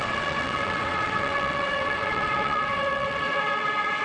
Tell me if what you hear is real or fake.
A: fake